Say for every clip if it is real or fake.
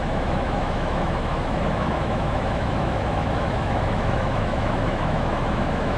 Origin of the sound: fake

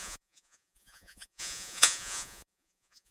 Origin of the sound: fake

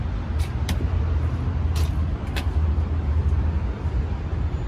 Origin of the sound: real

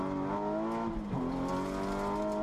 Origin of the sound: real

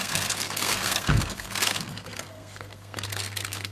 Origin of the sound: fake